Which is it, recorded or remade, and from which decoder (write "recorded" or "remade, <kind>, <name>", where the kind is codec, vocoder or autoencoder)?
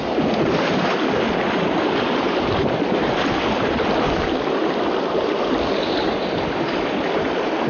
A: remade, vocoder, BigVGAN v2